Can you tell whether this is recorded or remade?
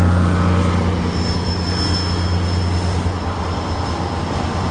recorded